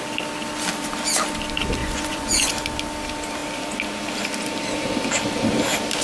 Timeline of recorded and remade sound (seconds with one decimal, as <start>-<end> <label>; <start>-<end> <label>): 0.0-1.8 recorded; 1.8-2.5 remade; 2.5-6.0 recorded